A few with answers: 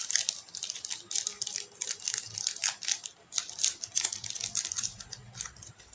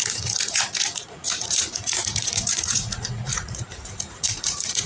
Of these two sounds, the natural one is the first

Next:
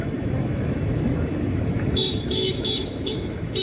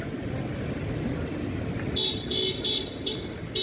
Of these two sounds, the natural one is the second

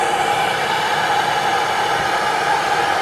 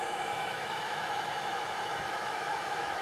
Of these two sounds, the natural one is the first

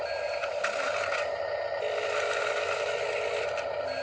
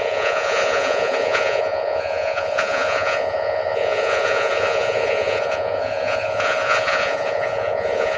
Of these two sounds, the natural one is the first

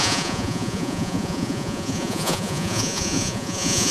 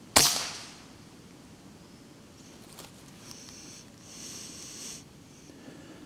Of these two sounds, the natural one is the second